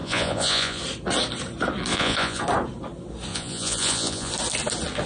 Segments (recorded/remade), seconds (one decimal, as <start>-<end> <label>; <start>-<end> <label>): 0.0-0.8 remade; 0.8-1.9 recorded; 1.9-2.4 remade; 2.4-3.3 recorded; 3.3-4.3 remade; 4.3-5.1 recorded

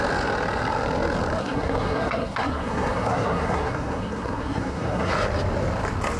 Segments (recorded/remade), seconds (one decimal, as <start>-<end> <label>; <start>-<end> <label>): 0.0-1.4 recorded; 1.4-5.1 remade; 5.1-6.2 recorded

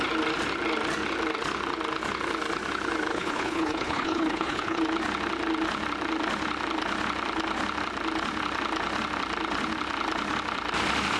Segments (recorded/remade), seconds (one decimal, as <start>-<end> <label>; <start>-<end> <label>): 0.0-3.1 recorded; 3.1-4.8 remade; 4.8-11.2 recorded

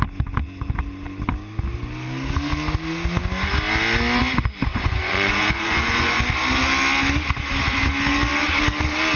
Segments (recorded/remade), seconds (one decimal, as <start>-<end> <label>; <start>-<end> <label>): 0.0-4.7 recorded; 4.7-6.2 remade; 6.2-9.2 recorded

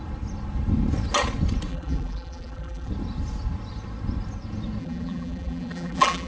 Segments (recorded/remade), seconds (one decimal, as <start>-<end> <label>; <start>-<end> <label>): 0.0-1.7 recorded; 1.7-2.9 remade; 2.9-4.8 recorded; 4.8-6.3 remade

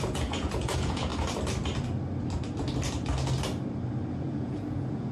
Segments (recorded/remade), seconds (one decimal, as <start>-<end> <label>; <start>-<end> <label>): 0.0-1.1 remade; 1.1-4.1 recorded; 4.1-5.1 remade

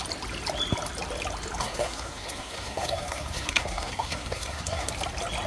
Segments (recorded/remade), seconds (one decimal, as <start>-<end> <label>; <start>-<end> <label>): 0.0-1.6 recorded; 1.6-4.9 remade; 4.9-5.5 recorded

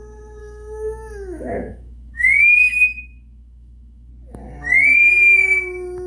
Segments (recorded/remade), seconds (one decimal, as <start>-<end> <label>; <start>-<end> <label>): 0.0-0.4 recorded; 0.4-4.1 remade; 4.1-6.1 recorded